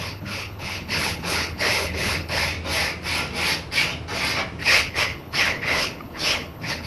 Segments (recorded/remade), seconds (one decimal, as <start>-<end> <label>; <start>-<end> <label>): 0.0-2.4 remade; 2.4-4.6 recorded; 4.6-6.9 remade